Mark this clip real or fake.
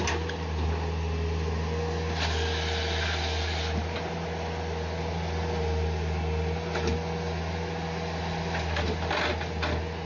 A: real